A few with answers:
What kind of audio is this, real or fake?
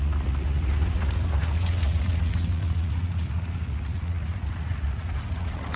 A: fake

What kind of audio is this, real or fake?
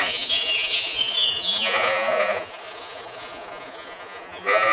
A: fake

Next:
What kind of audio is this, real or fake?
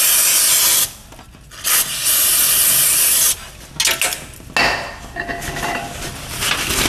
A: real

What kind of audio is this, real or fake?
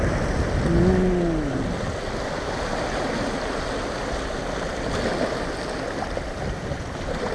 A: real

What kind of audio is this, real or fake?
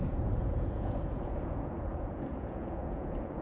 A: fake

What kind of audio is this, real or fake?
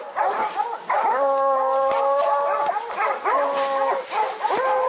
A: real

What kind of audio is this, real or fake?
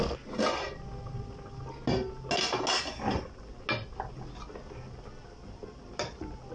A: real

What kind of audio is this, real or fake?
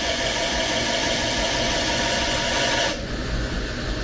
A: fake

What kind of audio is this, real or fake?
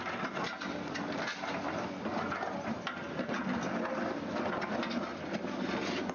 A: real